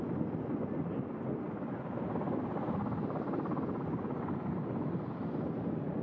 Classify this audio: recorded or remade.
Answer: recorded